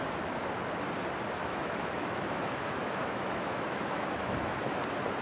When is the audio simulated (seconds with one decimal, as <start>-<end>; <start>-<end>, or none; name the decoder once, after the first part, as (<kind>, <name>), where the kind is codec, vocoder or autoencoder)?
1.4-4.5 (autoencoder, DAC-VAE)

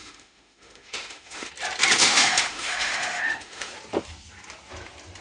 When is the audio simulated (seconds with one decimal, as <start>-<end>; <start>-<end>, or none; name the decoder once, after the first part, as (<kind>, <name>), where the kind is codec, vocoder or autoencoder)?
0.0-1.5 (autoencoder, DAC-VAE); 2.0-3.7